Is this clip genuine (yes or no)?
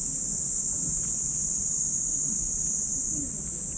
yes